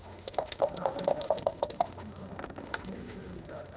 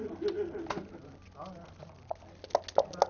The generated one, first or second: first